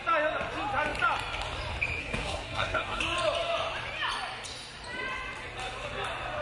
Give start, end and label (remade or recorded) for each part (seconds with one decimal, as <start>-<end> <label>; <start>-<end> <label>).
0.0-2.0 recorded; 2.0-3.0 remade; 3.0-6.4 recorded